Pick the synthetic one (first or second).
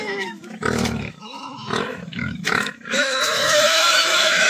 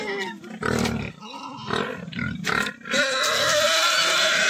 first